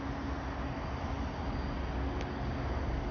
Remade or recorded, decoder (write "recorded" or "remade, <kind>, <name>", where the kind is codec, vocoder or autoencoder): recorded